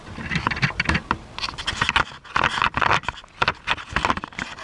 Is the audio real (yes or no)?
yes